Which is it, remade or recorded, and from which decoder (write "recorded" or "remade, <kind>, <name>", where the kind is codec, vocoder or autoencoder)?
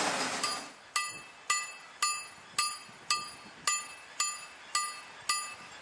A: recorded